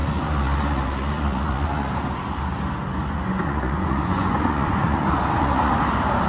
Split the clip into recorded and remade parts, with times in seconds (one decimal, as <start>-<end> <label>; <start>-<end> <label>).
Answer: 0.0-1.9 remade; 1.9-3.0 recorded; 3.0-5.7 remade; 5.7-6.3 recorded